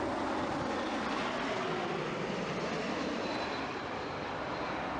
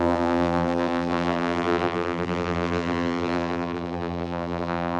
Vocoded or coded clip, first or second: second